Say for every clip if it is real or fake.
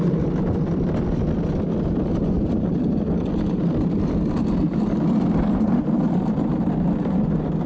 real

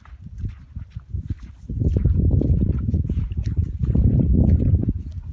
fake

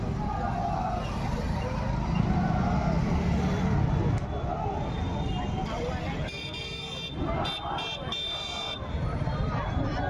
real